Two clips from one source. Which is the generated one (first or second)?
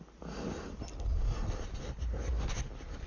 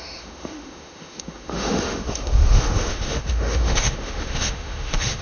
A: second